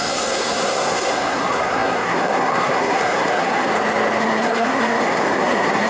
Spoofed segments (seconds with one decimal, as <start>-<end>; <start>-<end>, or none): 0.0-3.7; 4.2-5.9